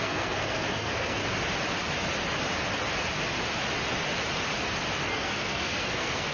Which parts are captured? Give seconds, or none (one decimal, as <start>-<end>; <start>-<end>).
1.2-5.0